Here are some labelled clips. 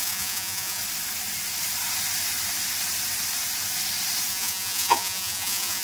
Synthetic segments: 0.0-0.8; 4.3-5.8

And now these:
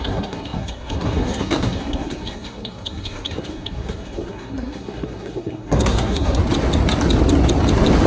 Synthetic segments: 0.0-6.4

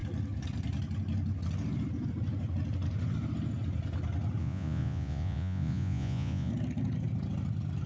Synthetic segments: 4.4-6.5

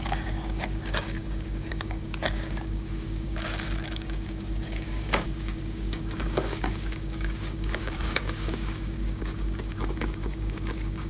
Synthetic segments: 0.0-11.1

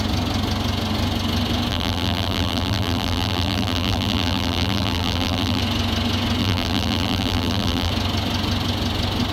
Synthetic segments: 1.7-5.6; 6.4-7.9

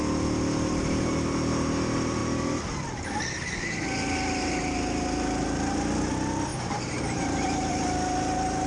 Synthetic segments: 6.5-7.7

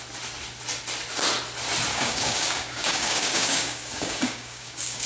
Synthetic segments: 1.9-5.1